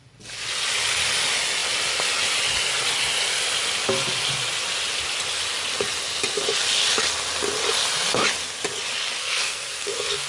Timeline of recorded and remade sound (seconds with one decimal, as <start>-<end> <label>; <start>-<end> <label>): 0.0-9.2 recorded; 9.2-10.3 remade